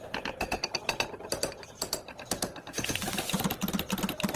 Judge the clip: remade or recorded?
recorded